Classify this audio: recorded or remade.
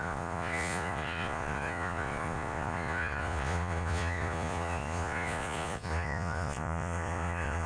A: remade